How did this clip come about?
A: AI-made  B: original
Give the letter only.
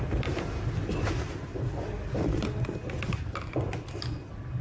B